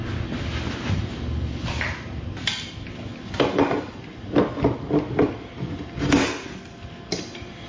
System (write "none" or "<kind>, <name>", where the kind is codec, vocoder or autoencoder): none